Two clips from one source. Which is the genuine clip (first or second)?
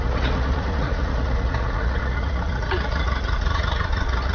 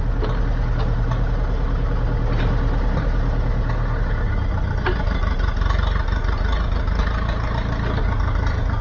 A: second